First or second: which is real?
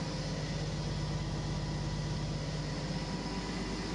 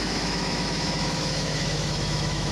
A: first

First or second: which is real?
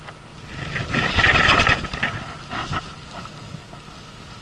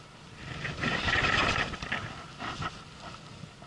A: first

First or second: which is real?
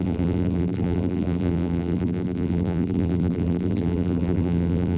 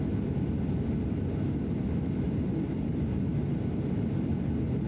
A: second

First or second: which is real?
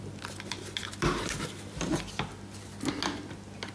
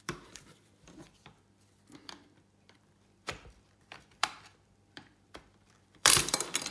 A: first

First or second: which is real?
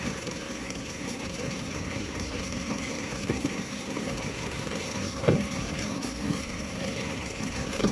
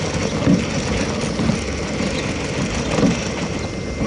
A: second